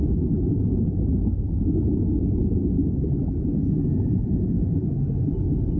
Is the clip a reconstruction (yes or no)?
no